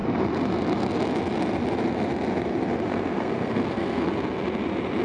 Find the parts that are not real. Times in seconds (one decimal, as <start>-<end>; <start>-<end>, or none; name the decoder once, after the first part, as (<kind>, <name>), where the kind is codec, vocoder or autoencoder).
2.9-4.1 (codec, SNAC)